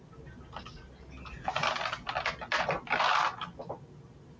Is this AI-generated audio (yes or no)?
no